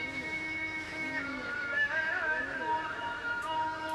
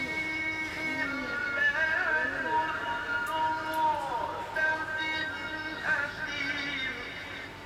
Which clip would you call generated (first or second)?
first